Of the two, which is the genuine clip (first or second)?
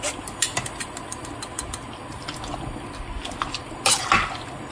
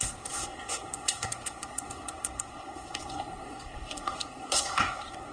first